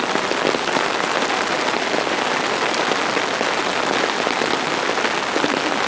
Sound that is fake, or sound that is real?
real